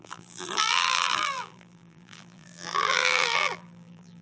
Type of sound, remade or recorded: remade